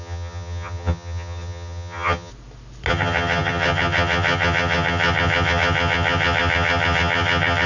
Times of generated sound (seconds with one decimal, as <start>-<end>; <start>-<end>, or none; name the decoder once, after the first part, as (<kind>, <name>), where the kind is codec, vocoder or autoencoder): 0.0-2.3 (vocoder, HiFi-GAN); 2.9-7.7